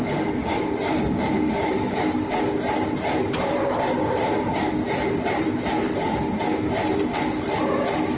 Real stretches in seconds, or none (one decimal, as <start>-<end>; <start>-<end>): 0.0-0.4; 2.4-3.6; 4.4-8.2